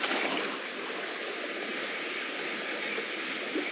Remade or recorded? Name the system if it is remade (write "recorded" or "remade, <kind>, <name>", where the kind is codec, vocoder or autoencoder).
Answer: recorded